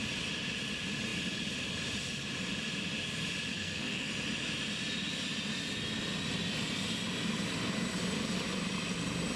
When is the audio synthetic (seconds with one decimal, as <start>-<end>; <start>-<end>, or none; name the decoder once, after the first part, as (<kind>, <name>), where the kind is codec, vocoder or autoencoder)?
3.5-4.1 (codec, SNAC)